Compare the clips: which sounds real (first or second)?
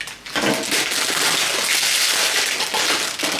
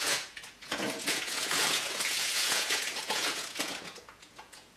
first